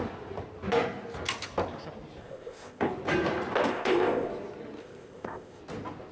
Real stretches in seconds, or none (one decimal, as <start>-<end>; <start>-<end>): 0.0-2.2; 2.9-3.7; 4.3-4.8; 5.6-6.1